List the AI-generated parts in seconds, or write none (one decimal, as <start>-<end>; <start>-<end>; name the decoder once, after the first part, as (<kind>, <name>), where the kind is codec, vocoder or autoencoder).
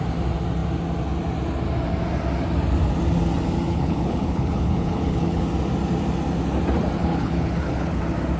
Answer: 3.7-5.4 (codec, HILCodec); 7.0-8.0